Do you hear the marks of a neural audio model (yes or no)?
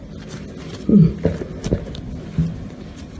no